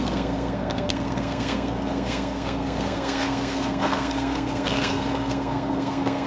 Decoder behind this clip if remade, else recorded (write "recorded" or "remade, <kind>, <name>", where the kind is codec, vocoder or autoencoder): remade, codec, SNAC